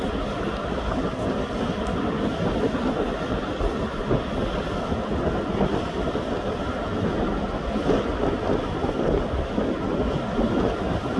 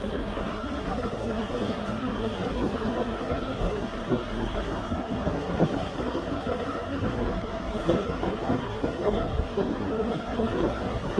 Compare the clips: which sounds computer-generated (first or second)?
second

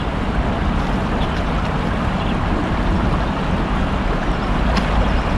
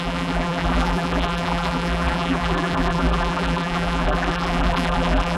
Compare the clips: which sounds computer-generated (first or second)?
second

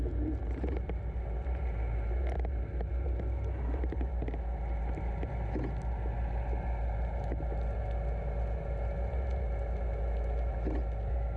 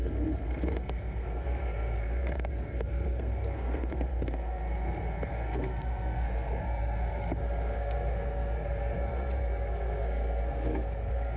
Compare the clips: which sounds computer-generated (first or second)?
second